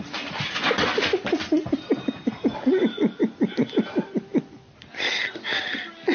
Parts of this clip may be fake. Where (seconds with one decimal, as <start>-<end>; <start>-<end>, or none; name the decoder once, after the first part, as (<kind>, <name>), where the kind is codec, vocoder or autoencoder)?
none